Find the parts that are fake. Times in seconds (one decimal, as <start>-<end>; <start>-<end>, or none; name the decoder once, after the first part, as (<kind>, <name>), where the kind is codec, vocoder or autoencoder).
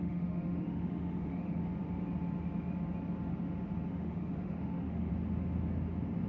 0.0-1.6 (autoencoder, DAC-VAE); 3.9-5.1